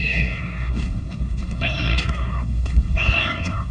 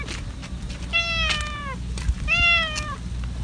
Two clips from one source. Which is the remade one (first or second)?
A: first